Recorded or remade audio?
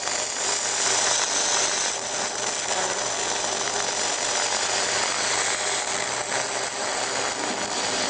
recorded